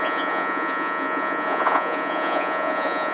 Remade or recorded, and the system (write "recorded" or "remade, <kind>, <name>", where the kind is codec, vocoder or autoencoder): remade, vocoder, Vocos